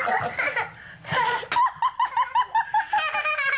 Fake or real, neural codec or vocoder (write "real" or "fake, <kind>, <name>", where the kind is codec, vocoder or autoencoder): real